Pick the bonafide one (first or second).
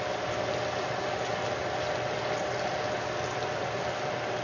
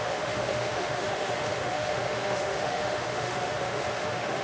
first